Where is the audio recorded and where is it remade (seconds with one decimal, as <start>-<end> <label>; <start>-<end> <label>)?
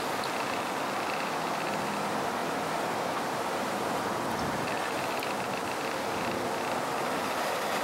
0.0-7.8 recorded